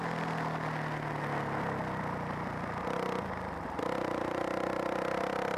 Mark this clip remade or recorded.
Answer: recorded